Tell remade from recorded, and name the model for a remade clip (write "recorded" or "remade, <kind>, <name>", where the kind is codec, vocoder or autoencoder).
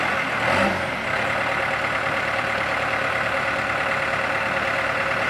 recorded